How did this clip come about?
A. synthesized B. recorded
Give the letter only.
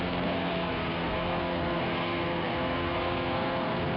A